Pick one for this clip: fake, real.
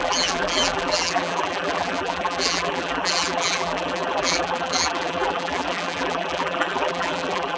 fake